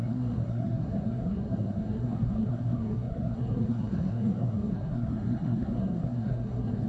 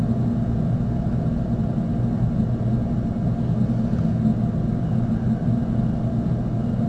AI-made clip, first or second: first